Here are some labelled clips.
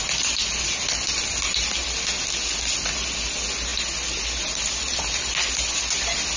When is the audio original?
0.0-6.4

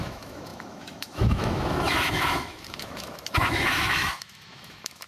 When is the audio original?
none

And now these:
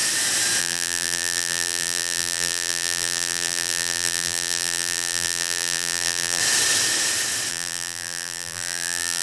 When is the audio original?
0.0-0.6; 6.4-7.5

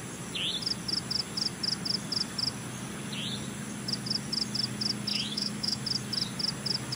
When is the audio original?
0.0-5.1; 5.8-7.0